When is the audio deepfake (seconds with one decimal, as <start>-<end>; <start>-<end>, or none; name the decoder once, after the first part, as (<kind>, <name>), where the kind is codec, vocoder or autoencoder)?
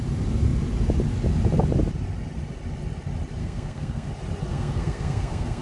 3.4-4.1 (codec, SNAC); 4.5-5.6